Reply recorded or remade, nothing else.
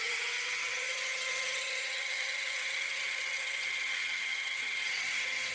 remade